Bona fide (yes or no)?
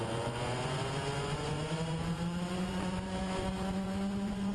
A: no